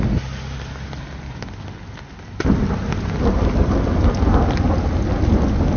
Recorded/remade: recorded